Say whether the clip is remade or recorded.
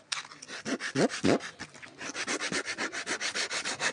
recorded